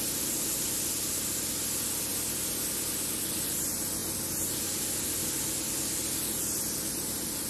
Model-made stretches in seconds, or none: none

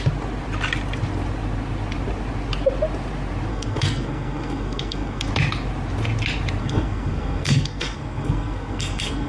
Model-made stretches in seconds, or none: 3.5-5.3 (codec, SNAC); 6.6-9.3

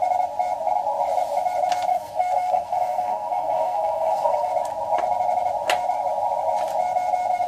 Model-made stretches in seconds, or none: 1.9-4.5 (codec, SNAC)

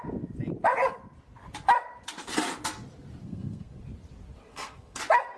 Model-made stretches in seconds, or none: 3.2-3.8 (codec, SNAC); 4.5-5.0

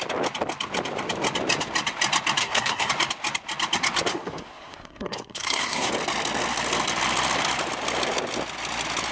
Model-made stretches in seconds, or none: 2.4-2.9 (codec, SNAC); 4.1-5.9